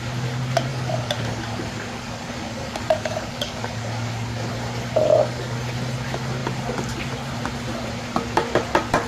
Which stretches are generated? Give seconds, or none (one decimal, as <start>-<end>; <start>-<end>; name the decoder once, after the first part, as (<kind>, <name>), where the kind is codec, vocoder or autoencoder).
0.7-4.5 (codec, DAC); 5.1-5.7